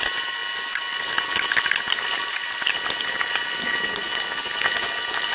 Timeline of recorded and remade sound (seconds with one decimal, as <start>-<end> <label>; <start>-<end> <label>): 0.0-5.3 recorded